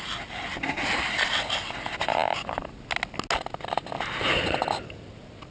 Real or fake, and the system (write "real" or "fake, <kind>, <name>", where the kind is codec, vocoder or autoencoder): real